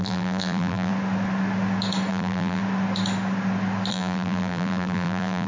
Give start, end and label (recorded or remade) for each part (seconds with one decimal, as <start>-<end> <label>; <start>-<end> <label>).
0.0-0.9 remade; 0.9-2.1 recorded; 2.1-2.6 remade; 2.6-3.9 recorded; 3.9-5.5 remade